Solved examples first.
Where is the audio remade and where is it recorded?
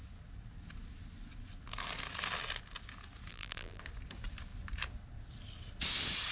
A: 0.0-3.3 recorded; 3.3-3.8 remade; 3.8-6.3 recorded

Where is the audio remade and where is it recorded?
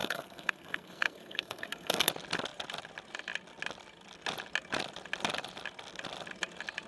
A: 0.0-2.1 remade; 2.1-6.9 recorded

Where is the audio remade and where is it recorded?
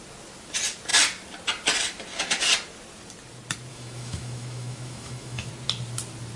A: 0.0-3.7 recorded; 3.7-5.5 remade; 5.5-6.4 recorded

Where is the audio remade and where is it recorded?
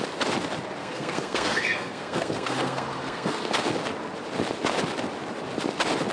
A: 0.0-0.8 recorded; 0.8-3.4 remade; 3.4-6.1 recorded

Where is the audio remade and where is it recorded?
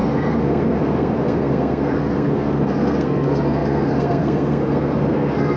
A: 0.0-5.6 remade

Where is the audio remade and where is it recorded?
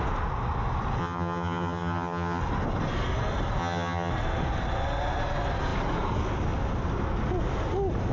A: 0.0-1.0 recorded; 1.0-2.4 remade; 2.4-3.6 recorded; 3.6-4.1 remade; 4.1-8.1 recorded